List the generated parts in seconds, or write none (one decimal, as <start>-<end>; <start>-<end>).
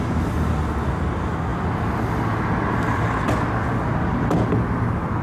none